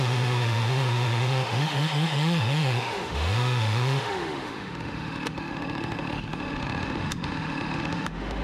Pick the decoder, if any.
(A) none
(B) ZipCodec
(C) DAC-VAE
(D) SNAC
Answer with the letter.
C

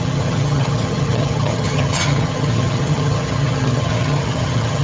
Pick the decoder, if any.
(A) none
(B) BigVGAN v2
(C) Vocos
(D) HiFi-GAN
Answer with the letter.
D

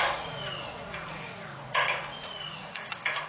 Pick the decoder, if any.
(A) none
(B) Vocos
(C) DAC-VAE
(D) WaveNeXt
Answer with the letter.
B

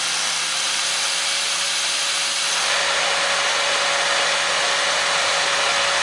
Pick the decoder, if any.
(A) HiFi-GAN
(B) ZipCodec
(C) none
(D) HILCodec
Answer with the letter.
C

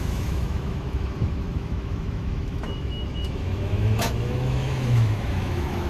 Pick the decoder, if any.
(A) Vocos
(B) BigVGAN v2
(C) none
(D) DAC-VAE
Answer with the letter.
D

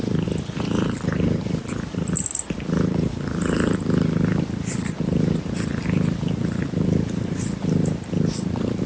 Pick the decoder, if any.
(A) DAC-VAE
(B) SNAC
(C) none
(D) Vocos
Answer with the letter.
C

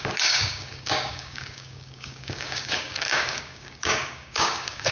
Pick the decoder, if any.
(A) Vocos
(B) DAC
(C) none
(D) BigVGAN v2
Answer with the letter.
B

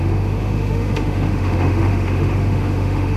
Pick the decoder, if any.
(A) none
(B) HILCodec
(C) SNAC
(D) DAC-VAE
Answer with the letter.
D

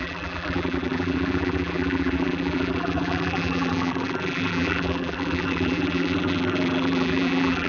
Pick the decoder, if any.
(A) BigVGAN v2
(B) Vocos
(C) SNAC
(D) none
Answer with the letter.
A